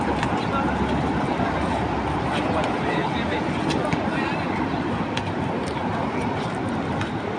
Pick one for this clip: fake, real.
fake